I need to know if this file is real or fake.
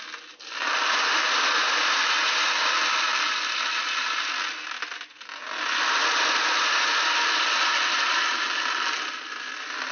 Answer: real